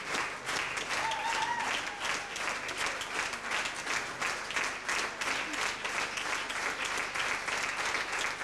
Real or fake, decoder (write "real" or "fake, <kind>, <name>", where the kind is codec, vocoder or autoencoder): real